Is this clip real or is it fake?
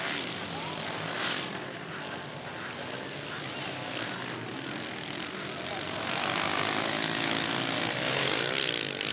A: real